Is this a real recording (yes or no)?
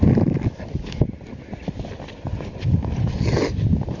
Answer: yes